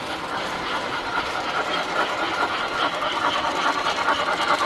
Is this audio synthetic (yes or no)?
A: yes